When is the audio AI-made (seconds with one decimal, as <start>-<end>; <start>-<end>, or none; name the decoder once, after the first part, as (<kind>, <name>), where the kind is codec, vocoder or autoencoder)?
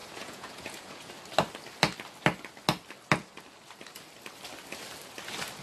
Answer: 0.0-1.1 (vocoder, Vocos)